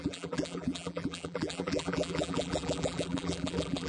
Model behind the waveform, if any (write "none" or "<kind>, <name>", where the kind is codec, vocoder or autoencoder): vocoder, BigVGAN v2